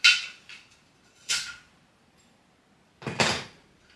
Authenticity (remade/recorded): recorded